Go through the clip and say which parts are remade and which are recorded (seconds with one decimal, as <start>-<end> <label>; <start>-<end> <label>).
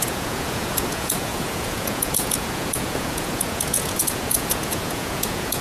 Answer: 0.0-5.6 remade